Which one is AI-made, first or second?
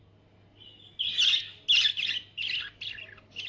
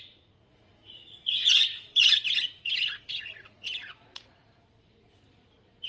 second